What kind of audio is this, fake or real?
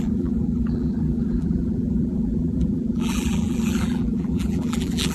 fake